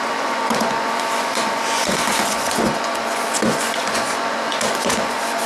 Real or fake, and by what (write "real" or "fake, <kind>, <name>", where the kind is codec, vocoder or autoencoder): fake, vocoder, Vocos